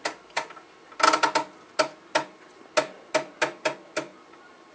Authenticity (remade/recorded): recorded